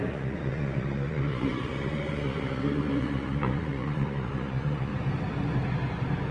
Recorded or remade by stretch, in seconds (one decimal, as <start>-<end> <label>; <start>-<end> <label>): 0.0-4.9 remade; 4.9-6.3 recorded